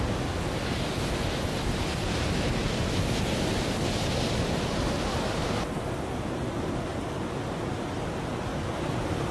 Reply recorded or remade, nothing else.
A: recorded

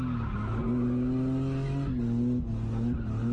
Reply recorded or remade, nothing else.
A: recorded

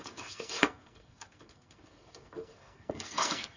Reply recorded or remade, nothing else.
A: remade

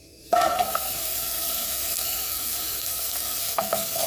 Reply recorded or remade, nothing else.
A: remade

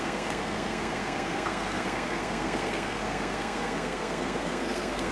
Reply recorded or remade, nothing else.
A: remade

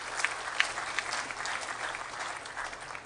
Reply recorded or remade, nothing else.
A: recorded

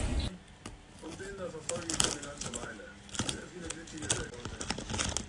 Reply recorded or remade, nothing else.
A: recorded